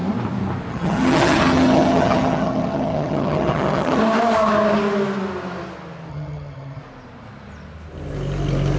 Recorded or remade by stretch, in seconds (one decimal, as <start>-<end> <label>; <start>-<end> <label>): 0.0-0.7 recorded; 0.7-4.0 remade; 4.0-6.1 recorded; 6.1-6.8 remade; 6.8-8.8 recorded